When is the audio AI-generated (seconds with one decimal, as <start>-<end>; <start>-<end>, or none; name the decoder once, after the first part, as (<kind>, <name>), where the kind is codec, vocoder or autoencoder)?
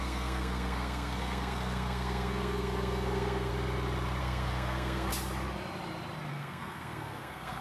0.0-3.5 (codec, SNAC); 4.2-5.1; 6.3-7.6